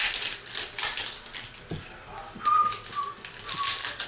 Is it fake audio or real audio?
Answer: real